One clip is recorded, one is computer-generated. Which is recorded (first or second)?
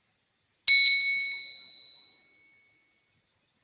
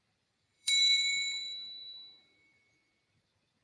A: first